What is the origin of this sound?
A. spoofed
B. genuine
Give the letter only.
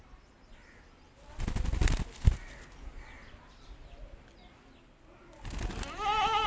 B